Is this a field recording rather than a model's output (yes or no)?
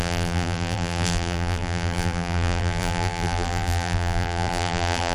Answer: no